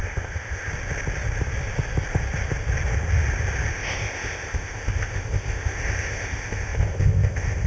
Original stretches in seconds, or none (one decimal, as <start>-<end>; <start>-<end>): 0.7-3.7